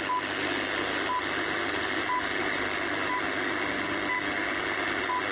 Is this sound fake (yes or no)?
no